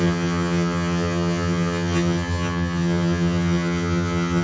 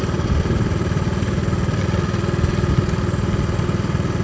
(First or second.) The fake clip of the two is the first